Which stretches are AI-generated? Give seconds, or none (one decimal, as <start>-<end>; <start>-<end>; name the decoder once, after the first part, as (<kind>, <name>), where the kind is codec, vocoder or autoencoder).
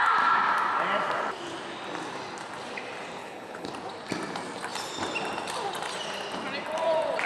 3.2-3.7 (codec, HILCodec)